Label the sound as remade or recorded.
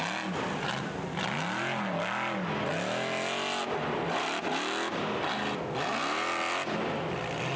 recorded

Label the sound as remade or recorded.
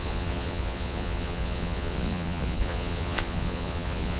remade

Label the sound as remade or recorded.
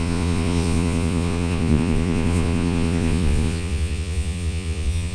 remade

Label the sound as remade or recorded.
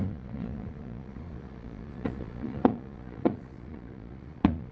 remade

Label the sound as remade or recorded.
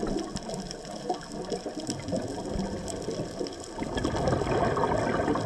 recorded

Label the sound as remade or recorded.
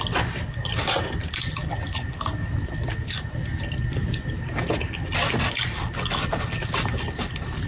recorded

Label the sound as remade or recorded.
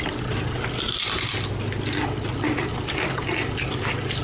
recorded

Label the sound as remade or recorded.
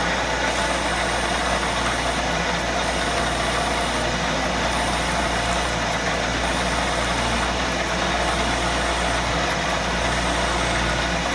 recorded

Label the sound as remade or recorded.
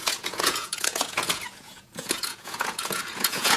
remade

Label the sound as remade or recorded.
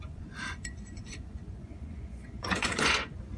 remade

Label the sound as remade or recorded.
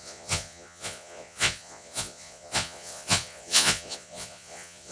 remade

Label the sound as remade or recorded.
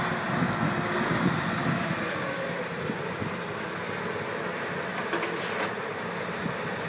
recorded